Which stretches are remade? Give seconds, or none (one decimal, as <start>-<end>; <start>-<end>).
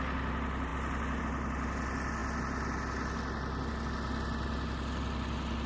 none